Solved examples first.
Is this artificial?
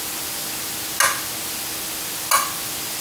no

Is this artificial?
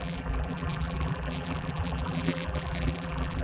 yes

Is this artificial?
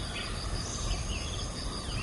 no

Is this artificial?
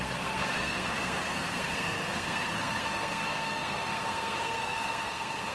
yes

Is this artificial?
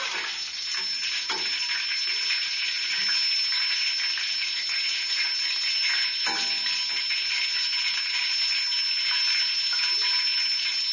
no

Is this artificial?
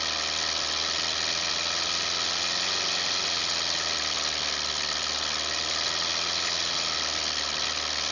no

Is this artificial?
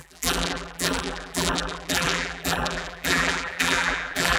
yes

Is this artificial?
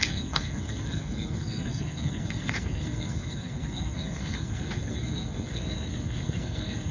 yes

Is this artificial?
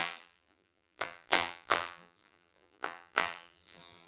yes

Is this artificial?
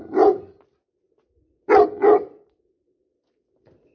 no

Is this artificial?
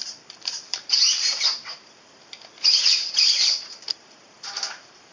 yes